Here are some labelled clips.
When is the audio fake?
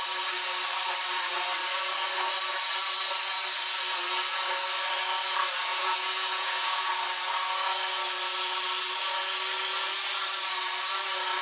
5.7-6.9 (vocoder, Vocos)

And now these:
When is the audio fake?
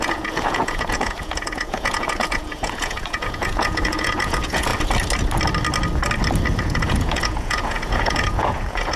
0.0-4.7 (vocoder, Vocos); 6.6-9.0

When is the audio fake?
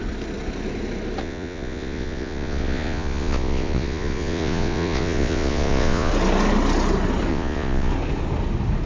1.2-6.1 (vocoder, Vocos); 7.3-7.9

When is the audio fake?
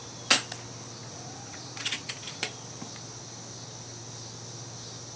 1.0-2.4 (vocoder, Vocos)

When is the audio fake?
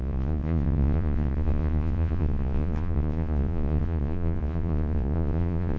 0.0-5.8 (vocoder, Vocos)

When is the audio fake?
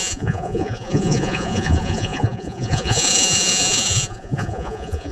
0.0-5.1 (vocoder, Vocos)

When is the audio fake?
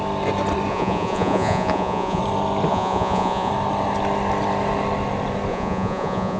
0.7-2.2 (vocoder, Vocos); 2.7-3.5; 5.5-6.4